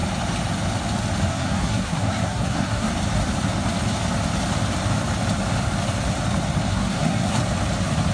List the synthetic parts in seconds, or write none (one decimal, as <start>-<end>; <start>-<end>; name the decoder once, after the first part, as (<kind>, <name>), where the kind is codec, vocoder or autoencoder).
1.3-2.9 (codec, SNAC); 6.7-7.4